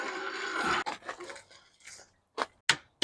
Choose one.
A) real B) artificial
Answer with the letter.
A